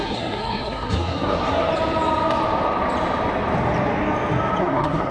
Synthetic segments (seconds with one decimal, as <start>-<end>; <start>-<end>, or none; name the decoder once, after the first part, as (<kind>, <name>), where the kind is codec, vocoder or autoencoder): 0.0-1.7 (codec, SNAC); 4.6-5.1